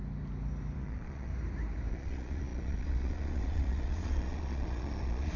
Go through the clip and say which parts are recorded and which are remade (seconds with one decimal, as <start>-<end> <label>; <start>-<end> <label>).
0.0-0.8 recorded; 0.8-1.3 remade; 1.3-1.9 recorded; 1.9-5.4 remade